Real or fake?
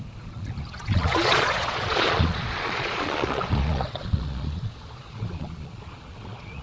fake